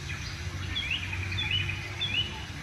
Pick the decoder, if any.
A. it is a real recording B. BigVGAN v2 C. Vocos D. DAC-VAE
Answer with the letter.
A